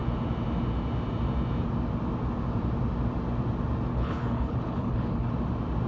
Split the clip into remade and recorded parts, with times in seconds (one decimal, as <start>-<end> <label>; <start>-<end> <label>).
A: 0.0-3.9 recorded; 3.9-5.3 remade; 5.3-5.9 recorded